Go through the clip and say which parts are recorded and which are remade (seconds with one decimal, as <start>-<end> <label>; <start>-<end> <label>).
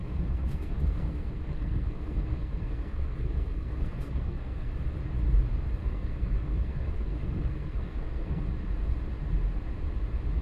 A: 0.0-4.7 remade; 4.7-5.8 recorded; 5.8-8.4 remade; 8.4-10.4 recorded